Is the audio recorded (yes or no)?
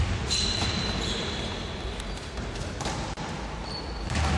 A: yes